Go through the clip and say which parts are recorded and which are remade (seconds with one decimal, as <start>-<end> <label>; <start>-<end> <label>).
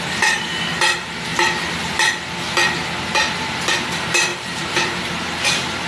0.0-4.3 recorded; 4.3-5.0 remade; 5.0-5.9 recorded